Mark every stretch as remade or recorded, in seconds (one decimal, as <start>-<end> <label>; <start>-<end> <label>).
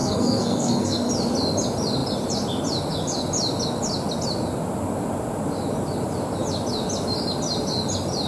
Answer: 0.0-1.1 remade; 1.1-8.3 recorded